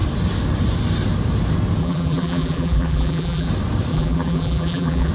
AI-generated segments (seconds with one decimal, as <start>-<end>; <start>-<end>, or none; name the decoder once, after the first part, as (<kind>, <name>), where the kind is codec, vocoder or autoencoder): 1.8-3.5 (vocoder, BigVGAN v2); 3.9-5.1